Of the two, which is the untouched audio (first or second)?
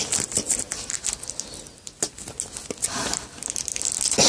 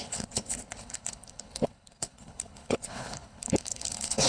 first